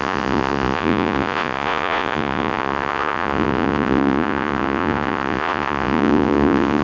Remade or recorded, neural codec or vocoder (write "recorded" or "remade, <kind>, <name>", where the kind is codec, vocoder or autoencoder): remade, vocoder, Vocos